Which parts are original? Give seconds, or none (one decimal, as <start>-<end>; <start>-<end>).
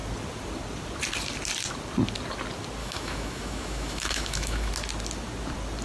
0.0-2.8; 4.7-5.8